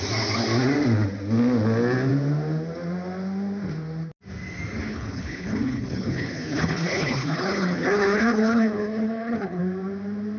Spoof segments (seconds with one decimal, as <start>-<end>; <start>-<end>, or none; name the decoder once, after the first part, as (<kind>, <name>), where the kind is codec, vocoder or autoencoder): 4.9-9.6 (codec, HILCodec)